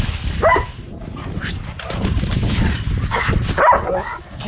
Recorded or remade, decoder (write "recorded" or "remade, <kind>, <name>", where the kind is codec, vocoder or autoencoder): recorded